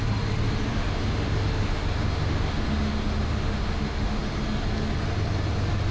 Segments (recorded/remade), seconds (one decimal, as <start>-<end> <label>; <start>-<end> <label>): 0.0-0.7 recorded; 0.7-4.2 remade; 4.2-5.9 recorded